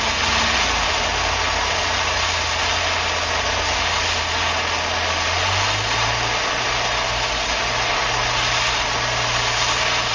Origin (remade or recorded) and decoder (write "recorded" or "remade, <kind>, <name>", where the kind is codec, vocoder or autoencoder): recorded